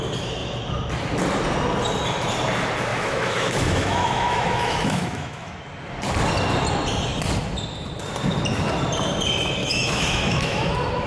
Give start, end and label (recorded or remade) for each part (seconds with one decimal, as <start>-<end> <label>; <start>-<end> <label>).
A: 0.0-2.9 recorded; 2.9-5.6 remade; 5.6-9.6 recorded; 9.6-10.7 remade; 10.7-11.1 recorded